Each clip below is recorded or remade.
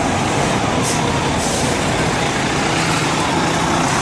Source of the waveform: recorded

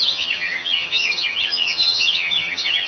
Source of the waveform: remade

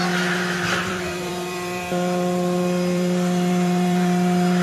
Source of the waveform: remade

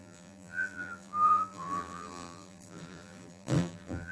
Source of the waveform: remade